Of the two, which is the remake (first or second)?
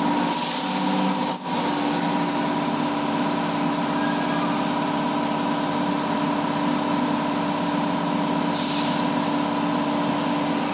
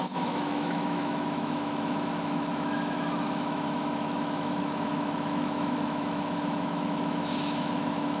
second